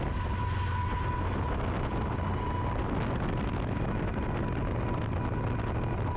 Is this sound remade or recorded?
recorded